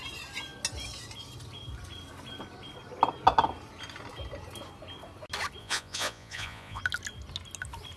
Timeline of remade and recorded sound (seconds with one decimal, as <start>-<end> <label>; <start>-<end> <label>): 0.0-5.6 recorded; 5.6-6.8 remade; 6.8-8.0 recorded